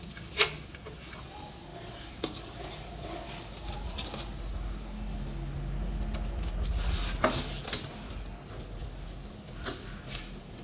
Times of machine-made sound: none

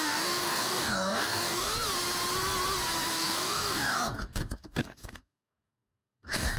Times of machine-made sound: 0.0-1.7; 3.1-6.6